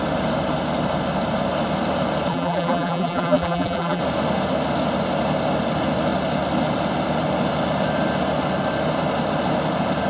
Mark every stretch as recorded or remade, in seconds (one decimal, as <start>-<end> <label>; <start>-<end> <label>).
0.0-2.3 recorded; 2.3-4.0 remade; 4.0-10.1 recorded